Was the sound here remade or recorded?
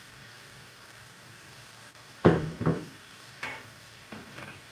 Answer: remade